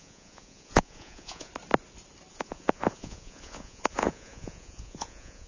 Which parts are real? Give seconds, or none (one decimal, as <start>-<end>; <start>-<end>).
1.5-2.3